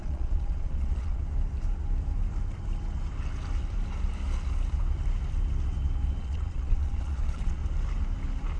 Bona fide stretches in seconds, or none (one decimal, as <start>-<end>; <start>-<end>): 1.2-6.2; 7.6-8.6